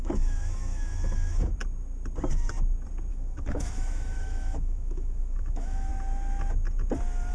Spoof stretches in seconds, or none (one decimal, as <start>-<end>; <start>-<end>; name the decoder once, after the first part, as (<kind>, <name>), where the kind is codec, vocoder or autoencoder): 0.0-1.5 (autoencoder, DAC-VAE); 3.1-5.9